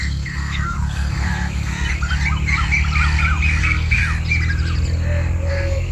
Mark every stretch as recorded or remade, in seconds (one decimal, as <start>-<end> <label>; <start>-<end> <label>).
0.0-1.7 remade; 1.7-3.6 recorded; 3.6-4.0 remade; 4.0-5.5 recorded; 5.5-5.9 remade